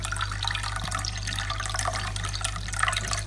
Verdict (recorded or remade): recorded